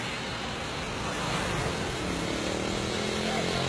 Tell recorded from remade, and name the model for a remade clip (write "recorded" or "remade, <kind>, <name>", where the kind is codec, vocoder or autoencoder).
recorded